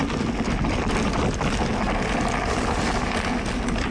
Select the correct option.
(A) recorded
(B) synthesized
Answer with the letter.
A